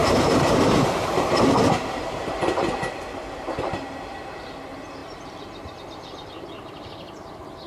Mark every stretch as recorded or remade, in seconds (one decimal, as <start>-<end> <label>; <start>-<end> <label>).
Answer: 0.0-7.7 remade